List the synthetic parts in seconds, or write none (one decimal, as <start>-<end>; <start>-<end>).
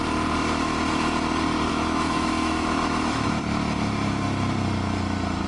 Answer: 1.7-3.4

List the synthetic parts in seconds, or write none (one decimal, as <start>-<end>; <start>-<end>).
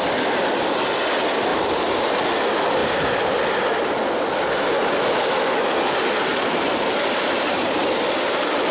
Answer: 1.5-2.2; 6.3-7.8